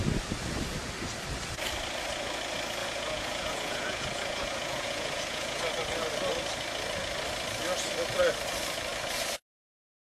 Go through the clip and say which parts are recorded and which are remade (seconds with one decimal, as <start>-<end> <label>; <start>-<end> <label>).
0.0-2.8 recorded; 2.8-5.6 remade; 5.6-10.1 recorded